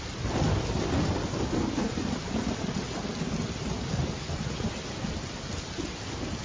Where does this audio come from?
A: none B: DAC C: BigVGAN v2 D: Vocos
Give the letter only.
A